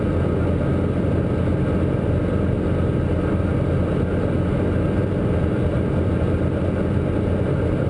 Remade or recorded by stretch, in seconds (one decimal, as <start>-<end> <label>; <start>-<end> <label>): 0.0-5.0 recorded; 5.0-6.7 remade; 6.7-7.9 recorded